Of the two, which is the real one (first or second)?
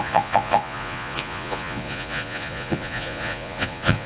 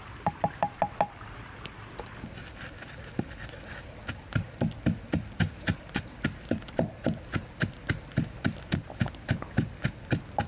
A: second